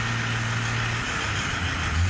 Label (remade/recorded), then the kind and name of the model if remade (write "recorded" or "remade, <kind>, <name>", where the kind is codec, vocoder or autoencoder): recorded